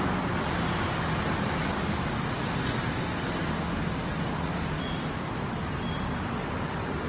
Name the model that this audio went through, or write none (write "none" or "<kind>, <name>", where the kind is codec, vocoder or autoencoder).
none